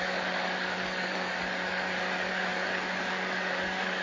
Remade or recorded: remade